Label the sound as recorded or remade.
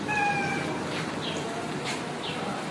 recorded